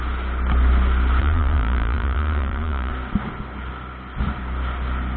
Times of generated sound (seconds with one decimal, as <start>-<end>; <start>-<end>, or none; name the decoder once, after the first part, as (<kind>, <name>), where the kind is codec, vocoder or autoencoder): 1.2-2.9 (vocoder, Vocos)